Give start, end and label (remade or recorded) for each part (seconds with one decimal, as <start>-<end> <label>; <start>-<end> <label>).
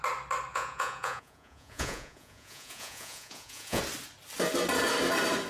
0.0-0.5 recorded; 0.5-3.8 remade; 3.8-5.5 recorded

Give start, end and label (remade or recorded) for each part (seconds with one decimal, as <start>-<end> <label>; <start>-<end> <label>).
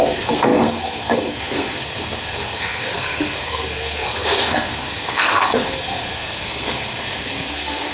0.0-7.9 remade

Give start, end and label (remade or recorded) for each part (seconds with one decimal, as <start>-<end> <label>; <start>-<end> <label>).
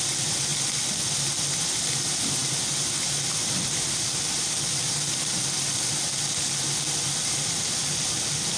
0.0-8.6 recorded